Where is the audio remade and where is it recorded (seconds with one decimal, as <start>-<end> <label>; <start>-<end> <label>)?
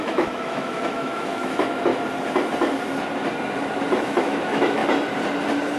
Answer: 0.0-1.9 remade; 1.9-3.9 recorded; 3.9-4.8 remade; 4.8-5.8 recorded